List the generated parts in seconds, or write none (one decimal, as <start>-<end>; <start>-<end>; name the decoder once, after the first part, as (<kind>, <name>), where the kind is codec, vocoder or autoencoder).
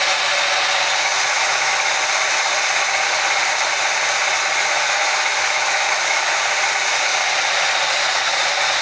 1.3-1.9 (autoencoder, DAC-VAE); 4.6-6.4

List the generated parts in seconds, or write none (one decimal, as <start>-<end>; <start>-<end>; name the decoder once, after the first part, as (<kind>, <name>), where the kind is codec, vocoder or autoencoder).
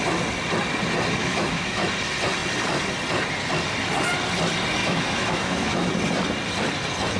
1.2-1.8 (autoencoder, DAC-VAE); 4.8-5.9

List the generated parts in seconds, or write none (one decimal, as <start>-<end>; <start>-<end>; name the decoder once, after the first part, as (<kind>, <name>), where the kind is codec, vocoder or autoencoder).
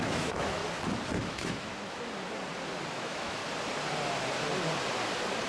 0.0-0.6 (autoencoder, DAC-VAE); 1.2-1.7; 2.9-3.4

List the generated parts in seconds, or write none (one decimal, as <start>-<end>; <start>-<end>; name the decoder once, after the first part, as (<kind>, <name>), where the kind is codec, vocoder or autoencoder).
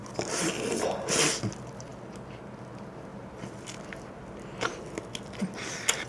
none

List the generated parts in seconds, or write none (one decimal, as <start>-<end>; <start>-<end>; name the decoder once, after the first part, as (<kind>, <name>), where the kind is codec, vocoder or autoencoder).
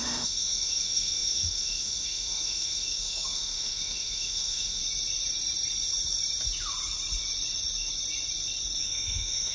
0.0-4.8 (autoencoder, DAC-VAE); 8.8-9.5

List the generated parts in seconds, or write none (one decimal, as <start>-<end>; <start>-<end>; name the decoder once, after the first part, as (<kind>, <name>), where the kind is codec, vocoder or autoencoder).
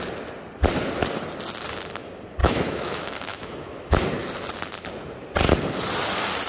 2.4-4.0 (autoencoder, DAC-VAE)